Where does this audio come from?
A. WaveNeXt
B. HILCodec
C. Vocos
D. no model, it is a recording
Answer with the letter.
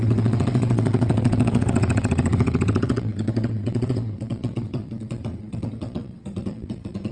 A